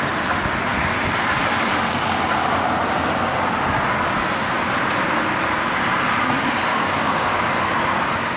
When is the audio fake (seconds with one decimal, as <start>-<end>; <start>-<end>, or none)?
6.7-7.5

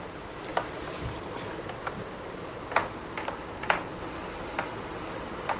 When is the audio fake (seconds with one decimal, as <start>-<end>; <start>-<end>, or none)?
none

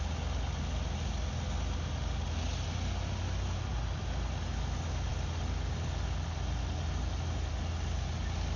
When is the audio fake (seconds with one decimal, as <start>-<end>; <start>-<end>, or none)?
none

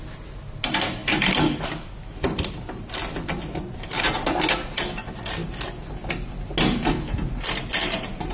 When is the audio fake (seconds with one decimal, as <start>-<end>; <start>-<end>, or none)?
none